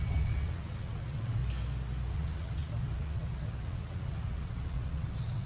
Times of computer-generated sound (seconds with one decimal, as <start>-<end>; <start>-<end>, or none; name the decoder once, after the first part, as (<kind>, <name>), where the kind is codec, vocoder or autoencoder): 0.0-1.4 (vocoder, WaveNeXt); 2.1-5.5